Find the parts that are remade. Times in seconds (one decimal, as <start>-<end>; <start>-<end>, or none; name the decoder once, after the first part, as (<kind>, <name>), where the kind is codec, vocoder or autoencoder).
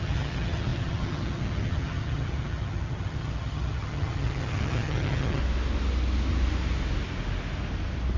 0.0-5.4 (vocoder, HiFi-GAN)